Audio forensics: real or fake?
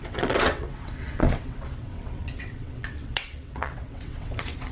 fake